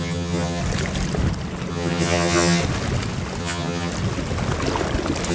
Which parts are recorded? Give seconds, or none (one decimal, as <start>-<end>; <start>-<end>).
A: 0.6-1.7; 2.6-3.4; 3.9-5.3